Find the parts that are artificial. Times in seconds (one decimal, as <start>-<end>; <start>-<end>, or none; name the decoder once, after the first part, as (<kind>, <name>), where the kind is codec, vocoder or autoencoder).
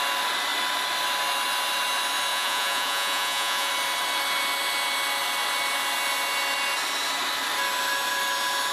2.3-3.7 (vocoder, Vocos)